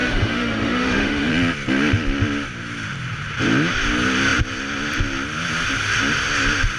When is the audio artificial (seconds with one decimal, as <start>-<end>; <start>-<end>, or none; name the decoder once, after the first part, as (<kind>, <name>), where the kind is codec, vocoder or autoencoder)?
0.0-1.3 (autoencoder, DAC-VAE)